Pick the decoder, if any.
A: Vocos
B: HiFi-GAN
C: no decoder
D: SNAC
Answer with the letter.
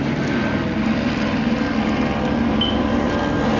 C